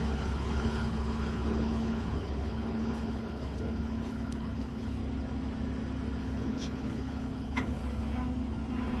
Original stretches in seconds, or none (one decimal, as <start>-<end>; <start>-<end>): 5.0-6.2; 7.8-9.0